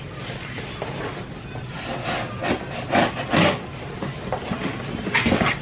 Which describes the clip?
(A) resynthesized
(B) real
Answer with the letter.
B